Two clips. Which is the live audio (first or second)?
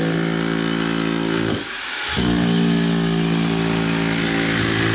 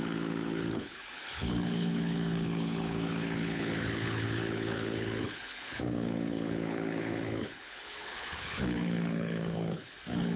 first